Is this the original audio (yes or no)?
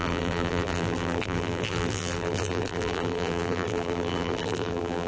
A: no